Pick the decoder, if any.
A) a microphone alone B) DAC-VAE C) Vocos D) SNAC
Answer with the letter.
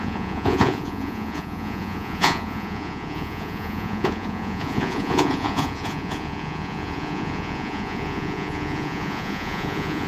C